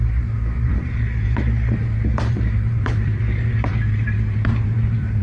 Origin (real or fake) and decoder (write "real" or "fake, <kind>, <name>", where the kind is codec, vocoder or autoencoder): fake, vocoder, BigVGAN v2